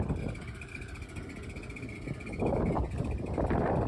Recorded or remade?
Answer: recorded